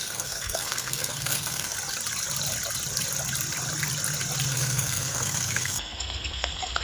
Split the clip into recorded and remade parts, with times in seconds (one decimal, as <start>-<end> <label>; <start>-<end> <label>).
0.0-1.7 remade; 1.7-4.5 recorded; 4.5-6.8 remade